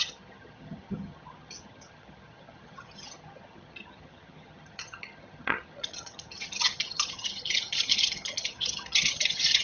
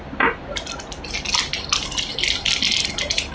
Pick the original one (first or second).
second